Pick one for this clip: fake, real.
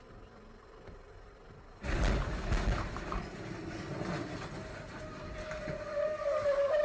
real